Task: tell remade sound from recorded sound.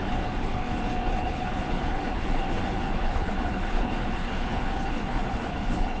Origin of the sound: remade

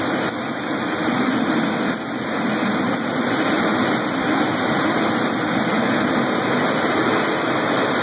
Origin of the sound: recorded